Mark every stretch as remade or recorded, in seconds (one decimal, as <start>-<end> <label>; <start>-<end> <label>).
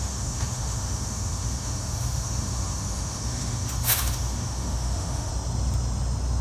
0.0-5.3 remade; 5.3-6.4 recorded